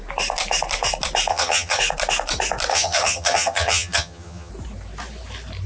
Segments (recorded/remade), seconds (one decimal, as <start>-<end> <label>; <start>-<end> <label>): 0.0-1.3 recorded; 1.3-1.8 remade; 1.8-2.7 recorded; 2.7-4.5 remade; 4.5-5.7 recorded